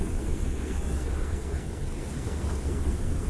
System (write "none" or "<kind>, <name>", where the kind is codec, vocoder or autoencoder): codec, SNAC